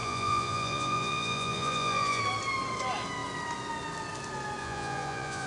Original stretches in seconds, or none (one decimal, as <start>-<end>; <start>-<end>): 2.2-4.6